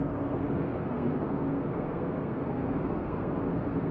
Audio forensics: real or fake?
fake